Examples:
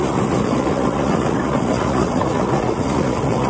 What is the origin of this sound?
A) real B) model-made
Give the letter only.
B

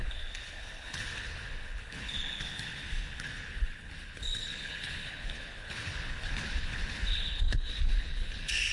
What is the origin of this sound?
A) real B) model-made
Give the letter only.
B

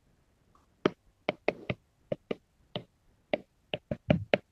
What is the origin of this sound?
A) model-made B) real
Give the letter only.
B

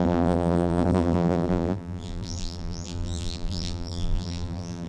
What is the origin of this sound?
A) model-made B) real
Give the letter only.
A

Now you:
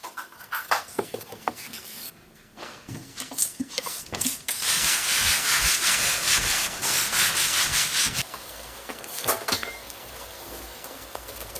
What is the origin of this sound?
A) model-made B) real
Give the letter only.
A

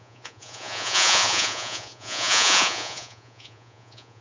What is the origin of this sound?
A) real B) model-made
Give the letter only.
B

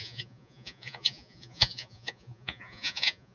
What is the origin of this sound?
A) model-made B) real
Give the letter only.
A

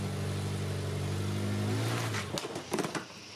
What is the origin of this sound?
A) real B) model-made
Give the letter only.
A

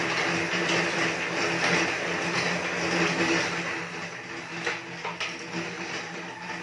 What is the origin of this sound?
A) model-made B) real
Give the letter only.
B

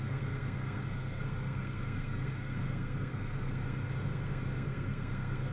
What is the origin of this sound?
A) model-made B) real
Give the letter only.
A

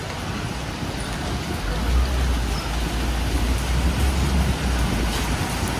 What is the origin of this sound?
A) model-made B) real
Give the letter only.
B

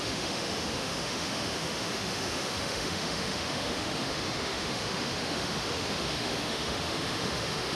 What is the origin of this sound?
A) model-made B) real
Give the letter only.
A